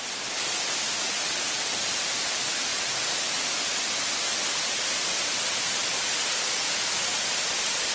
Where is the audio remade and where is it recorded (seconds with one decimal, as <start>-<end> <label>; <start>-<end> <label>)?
0.0-7.9 recorded